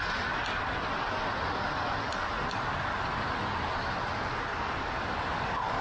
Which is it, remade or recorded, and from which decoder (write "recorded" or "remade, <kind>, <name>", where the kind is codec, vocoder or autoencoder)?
recorded